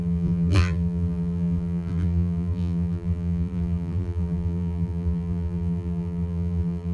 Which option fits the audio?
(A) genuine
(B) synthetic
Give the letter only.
B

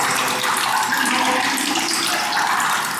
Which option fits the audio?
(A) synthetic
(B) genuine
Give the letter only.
B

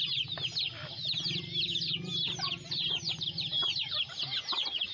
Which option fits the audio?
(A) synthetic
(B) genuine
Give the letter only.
B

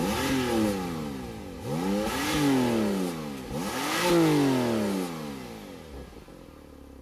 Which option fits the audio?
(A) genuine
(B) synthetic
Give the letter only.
A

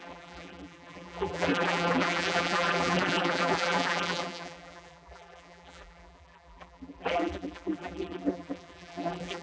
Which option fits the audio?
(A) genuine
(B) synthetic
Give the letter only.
B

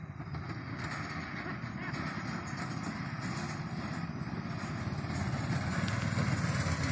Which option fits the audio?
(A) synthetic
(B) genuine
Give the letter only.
B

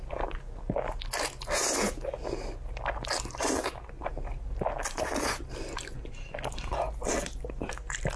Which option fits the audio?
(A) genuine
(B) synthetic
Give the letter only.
A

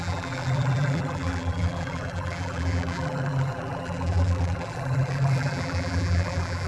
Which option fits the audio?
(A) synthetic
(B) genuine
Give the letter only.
A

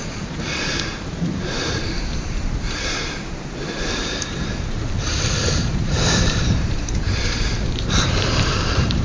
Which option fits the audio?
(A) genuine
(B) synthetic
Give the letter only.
B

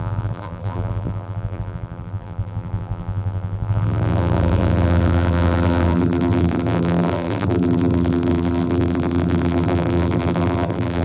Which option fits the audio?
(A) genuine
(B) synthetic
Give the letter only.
B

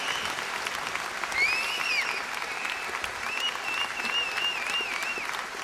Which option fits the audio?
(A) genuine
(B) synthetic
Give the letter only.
A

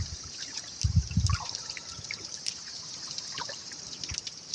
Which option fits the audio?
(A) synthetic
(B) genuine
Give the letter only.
A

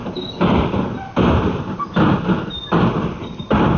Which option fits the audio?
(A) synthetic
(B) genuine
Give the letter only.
B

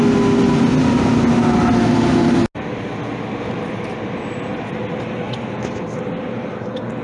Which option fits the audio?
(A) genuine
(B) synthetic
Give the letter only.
A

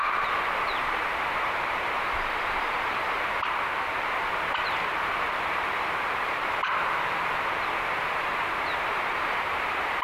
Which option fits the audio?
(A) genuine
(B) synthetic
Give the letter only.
B